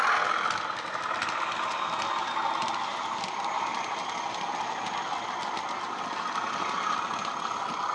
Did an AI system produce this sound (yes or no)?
no